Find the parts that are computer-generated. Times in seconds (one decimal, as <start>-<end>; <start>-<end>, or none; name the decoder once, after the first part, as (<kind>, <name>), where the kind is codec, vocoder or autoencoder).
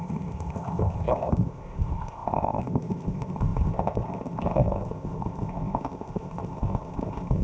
0.0-7.4 (codec, ZipCodec)